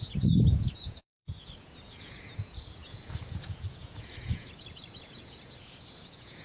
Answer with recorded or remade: remade